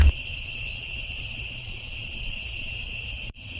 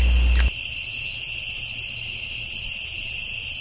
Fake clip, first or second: first